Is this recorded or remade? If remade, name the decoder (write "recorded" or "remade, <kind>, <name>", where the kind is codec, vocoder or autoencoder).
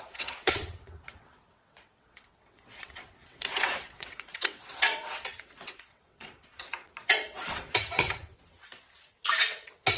remade, vocoder, WaveNeXt